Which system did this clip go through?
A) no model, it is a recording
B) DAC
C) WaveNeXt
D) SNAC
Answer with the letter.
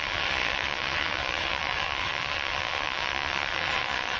C